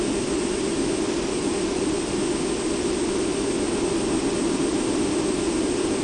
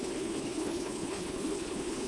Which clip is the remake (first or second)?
second